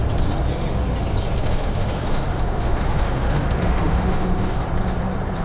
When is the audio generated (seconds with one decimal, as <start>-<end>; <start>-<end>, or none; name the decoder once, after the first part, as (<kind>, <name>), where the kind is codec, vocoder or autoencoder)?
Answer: 1.4-4.6 (autoencoder, DAC-VAE)